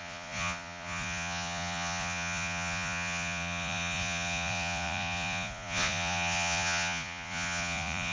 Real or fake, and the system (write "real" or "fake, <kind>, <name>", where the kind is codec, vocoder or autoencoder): fake, vocoder, Vocos